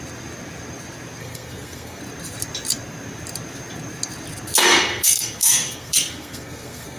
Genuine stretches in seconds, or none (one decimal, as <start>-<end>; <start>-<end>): 0.0-1.2; 2.0-4.6